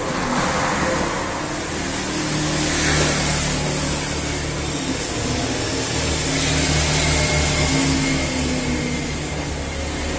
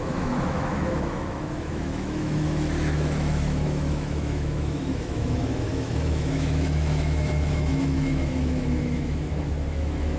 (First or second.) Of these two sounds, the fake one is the second